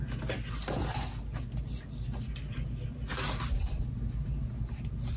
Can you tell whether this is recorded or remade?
recorded